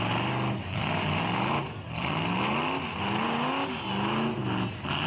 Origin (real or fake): real